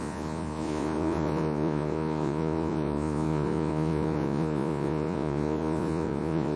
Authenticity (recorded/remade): remade